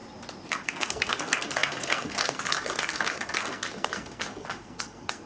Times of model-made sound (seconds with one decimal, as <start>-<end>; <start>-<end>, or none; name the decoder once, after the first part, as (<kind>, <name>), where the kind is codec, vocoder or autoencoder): 0.5-5.3 (codec, SNAC)